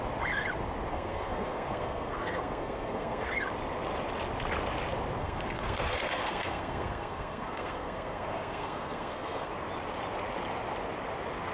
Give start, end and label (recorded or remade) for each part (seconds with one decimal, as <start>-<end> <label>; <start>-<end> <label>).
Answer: 0.0-0.9 recorded; 0.9-3.3 remade; 3.3-5.2 recorded; 5.2-9.5 remade; 9.5-11.5 recorded